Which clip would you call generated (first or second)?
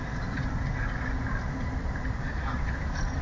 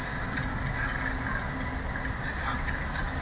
first